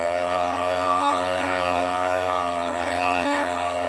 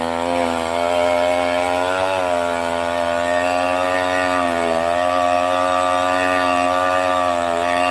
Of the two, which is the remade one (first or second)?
first